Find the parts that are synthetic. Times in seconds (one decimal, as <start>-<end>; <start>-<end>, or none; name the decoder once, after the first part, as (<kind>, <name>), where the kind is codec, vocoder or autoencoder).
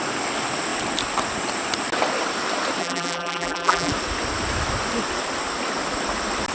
2.8-3.9 (vocoder, BigVGAN v2)